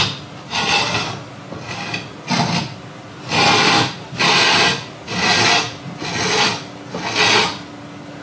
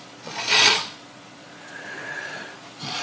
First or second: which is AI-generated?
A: second